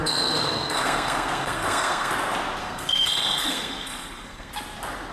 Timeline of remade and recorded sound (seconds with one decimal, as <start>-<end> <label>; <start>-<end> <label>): 0.0-2.1 remade; 2.1-2.6 recorded; 2.6-4.5 remade; 4.5-5.1 recorded